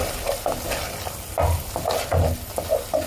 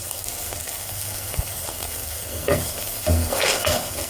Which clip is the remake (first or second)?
second